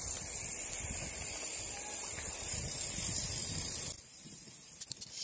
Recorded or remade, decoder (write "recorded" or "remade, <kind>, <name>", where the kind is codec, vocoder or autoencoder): recorded